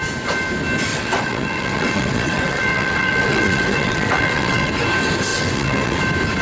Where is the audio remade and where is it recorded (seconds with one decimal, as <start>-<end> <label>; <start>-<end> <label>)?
0.0-0.9 recorded; 0.9-4.7 remade; 4.7-5.3 recorded; 5.3-6.0 remade; 6.0-6.4 recorded